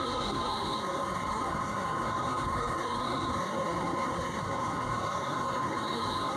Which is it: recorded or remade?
remade